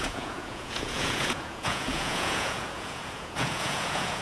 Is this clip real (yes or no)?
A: no